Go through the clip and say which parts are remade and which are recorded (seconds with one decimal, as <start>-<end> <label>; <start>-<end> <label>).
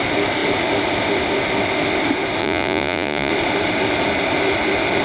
0.0-2.4 recorded; 2.4-3.3 remade; 3.3-5.0 recorded